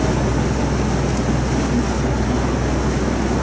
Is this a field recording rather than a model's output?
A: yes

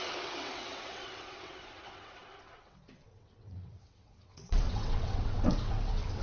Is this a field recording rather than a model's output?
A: no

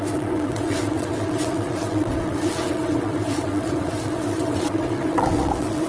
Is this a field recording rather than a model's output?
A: no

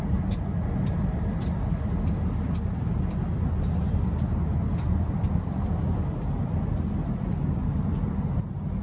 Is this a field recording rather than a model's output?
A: yes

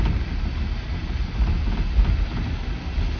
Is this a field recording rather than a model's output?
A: yes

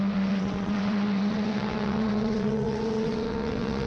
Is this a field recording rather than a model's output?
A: no